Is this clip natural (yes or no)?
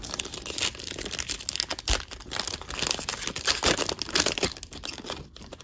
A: yes